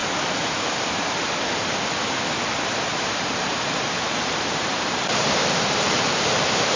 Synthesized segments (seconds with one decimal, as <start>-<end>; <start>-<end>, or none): 2.7-6.8